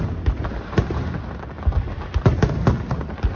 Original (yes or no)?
yes